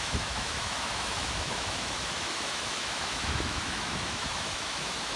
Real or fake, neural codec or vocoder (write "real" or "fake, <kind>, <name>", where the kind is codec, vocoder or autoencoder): fake, autoencoder, DAC-VAE